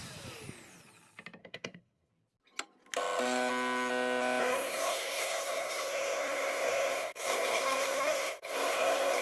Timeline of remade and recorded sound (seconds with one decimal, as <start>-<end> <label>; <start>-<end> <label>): 0.0-1.4 recorded; 1.4-2.1 remade; 2.1-4.4 recorded; 4.4-9.2 remade